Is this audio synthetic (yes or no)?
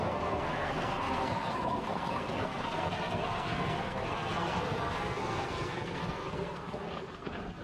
yes